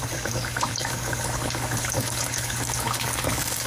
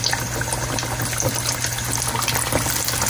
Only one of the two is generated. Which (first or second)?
first